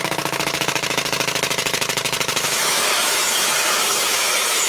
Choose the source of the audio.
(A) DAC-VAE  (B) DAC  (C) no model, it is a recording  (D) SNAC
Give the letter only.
A